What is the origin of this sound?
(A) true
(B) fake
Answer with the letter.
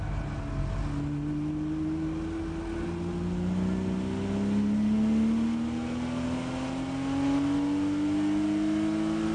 A